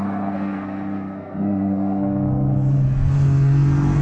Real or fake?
fake